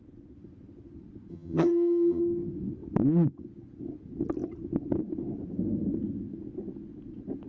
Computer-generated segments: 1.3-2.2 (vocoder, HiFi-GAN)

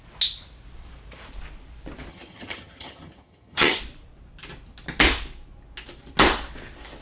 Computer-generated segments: 2.1-3.8 (vocoder, HiFi-GAN)

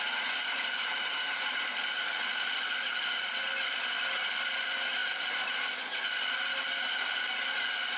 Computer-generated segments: 0.8-1.4 (vocoder, HiFi-GAN)

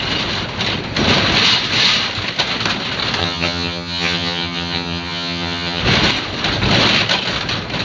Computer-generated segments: 3.2-5.8 (vocoder, HiFi-GAN)